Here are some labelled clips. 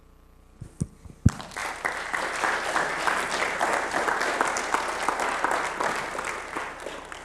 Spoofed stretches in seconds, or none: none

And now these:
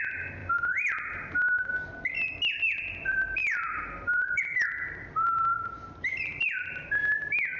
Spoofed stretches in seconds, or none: 0.4-1.7; 3.4-4.2; 5.5-6.9

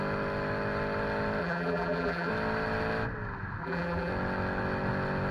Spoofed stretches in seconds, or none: 1.4-2.3; 3.6-4.1

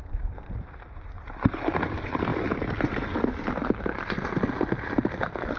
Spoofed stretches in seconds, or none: 0.0-2.3

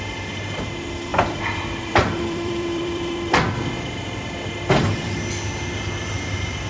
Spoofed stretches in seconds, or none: 1.1-3.3

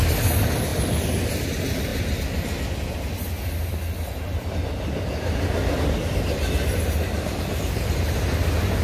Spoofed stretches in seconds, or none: none